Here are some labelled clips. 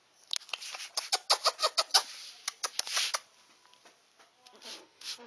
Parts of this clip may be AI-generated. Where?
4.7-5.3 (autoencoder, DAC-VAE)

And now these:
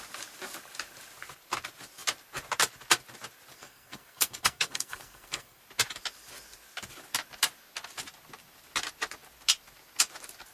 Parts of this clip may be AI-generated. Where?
3.5-5.6 (codec, SNAC)

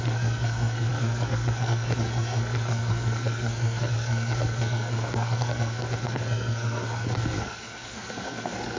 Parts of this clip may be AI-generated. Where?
0.0-8.8 (codec, SNAC)

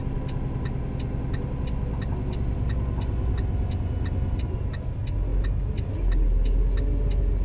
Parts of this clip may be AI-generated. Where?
none

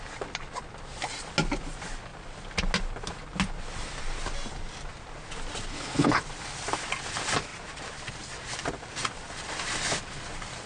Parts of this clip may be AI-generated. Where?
5.7-6.2 (codec, HILCodec)

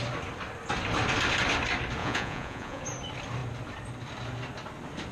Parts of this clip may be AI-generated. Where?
2.0-2.8 (vocoder, Vocos)

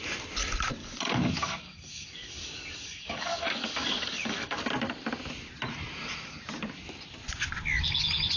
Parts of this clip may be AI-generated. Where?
0.8-4.6 (codec, DAC)

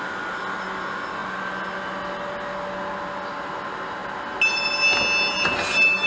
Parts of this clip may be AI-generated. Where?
none